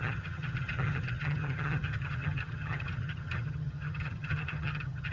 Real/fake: fake